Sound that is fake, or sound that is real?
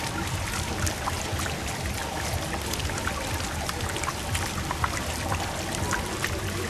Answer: real